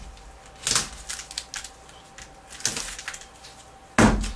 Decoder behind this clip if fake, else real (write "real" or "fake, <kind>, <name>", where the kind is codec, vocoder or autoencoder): real